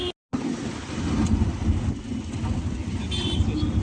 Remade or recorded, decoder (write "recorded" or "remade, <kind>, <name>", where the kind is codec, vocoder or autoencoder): recorded